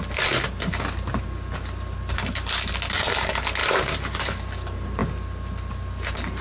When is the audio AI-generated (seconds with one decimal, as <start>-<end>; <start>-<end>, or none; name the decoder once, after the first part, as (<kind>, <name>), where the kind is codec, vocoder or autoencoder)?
3.6-4.3 (vocoder, BigVGAN v2)